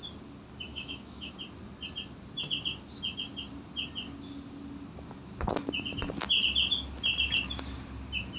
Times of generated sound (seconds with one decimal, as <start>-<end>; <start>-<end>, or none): 0.7-1.3